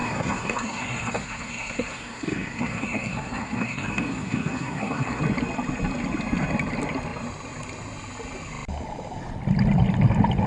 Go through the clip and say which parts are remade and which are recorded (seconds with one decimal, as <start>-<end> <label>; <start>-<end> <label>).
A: 0.0-5.2 remade; 5.2-10.5 recorded